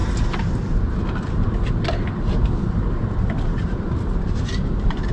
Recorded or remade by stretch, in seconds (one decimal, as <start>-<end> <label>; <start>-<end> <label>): 0.0-5.1 recorded